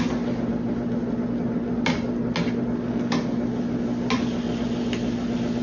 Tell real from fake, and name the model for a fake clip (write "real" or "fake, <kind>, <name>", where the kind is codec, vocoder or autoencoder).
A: real